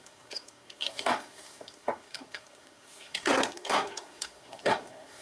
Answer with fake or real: fake